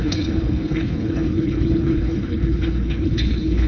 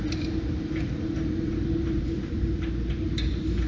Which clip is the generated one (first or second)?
first